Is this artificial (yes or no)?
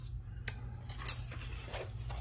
no